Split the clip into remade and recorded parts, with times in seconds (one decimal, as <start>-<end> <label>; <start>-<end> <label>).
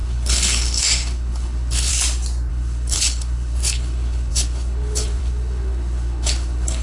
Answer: 0.0-1.9 remade; 1.9-2.5 recorded; 2.5-6.8 remade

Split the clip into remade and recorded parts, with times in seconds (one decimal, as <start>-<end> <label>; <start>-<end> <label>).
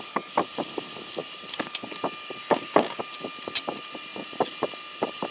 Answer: 0.0-2.4 recorded; 2.4-3.0 remade; 3.0-5.3 recorded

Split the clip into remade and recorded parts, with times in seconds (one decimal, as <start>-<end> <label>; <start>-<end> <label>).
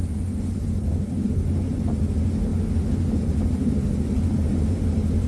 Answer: 0.0-5.3 recorded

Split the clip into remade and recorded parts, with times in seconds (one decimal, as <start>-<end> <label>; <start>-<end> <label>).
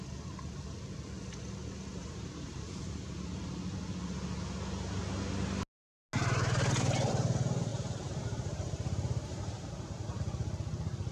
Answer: 0.0-1.9 recorded; 1.9-3.5 remade; 3.5-6.2 recorded; 6.2-7.1 remade; 7.1-7.7 recorded; 7.7-10.2 remade; 10.2-11.1 recorded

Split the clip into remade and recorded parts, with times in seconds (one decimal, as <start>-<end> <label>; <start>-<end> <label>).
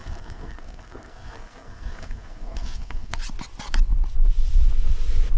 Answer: 0.0-3.2 remade; 3.2-5.4 recorded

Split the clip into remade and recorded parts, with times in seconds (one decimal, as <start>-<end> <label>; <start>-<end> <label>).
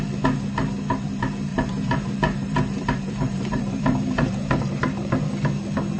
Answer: 0.0-1.5 recorded; 1.5-5.1 remade; 5.1-6.0 recorded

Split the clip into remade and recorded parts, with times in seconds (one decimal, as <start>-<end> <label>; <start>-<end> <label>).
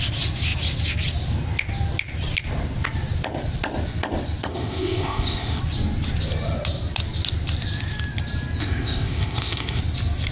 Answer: 0.0-4.5 recorded; 4.5-5.6 remade; 5.6-8.6 recorded; 8.6-9.8 remade; 9.8-10.3 recorded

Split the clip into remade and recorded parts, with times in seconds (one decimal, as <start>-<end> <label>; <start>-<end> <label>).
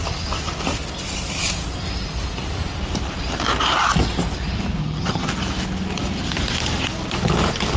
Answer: 0.0-4.8 recorded; 4.8-5.3 remade; 5.3-7.8 recorded